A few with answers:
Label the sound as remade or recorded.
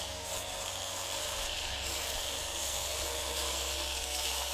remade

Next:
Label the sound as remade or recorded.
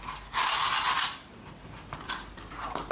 recorded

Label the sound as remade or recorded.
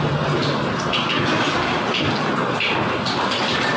recorded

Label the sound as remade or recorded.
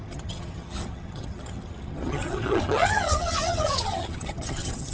remade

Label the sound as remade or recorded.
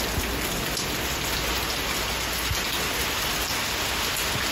recorded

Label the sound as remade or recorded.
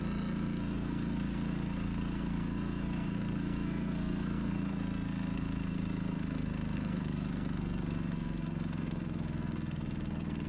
remade